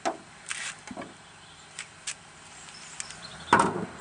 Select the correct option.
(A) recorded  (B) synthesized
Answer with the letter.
A